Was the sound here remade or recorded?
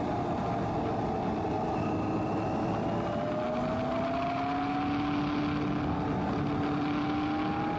recorded